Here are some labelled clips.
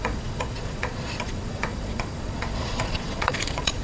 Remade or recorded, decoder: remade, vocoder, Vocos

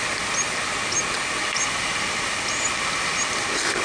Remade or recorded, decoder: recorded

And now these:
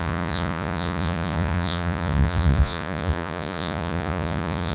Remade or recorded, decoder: remade, vocoder, Vocos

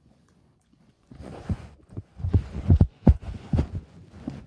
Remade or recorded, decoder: remade, vocoder, Vocos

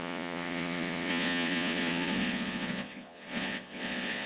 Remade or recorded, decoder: remade, vocoder, Vocos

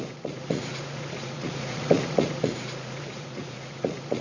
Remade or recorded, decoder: remade, vocoder, Vocos